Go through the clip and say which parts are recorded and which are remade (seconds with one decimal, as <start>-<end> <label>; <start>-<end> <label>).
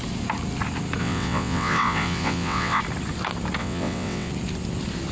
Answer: 0.0-1.0 recorded; 1.0-2.8 remade; 2.8-3.6 recorded; 3.6-4.3 remade; 4.3-5.1 recorded